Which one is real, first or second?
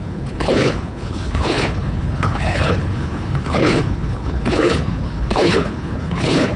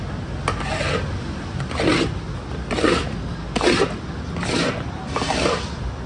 second